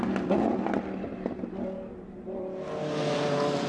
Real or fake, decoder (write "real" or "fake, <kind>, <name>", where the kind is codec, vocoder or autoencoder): real